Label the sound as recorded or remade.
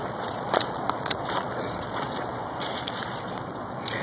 remade